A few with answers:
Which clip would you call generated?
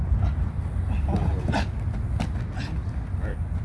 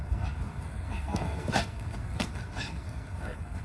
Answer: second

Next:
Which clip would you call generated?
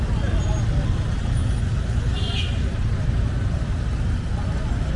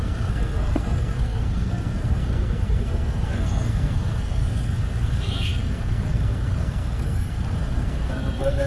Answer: second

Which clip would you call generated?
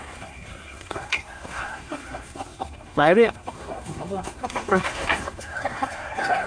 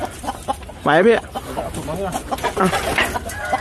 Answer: first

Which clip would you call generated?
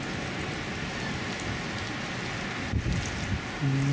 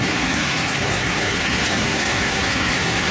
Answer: second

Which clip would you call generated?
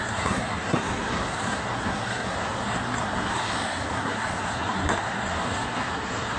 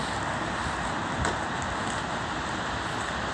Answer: first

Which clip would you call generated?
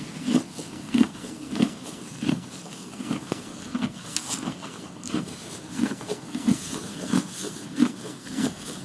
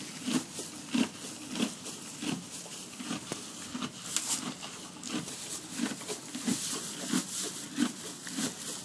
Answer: first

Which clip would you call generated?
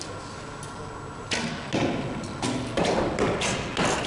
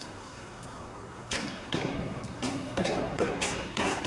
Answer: second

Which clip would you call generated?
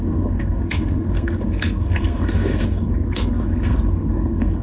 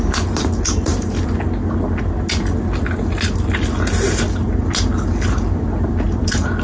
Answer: first